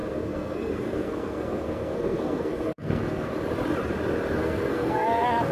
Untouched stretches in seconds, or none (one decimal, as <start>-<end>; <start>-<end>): 3.3-4.4